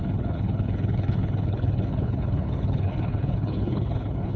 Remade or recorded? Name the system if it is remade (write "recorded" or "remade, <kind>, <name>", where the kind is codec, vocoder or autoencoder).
remade, codec, HILCodec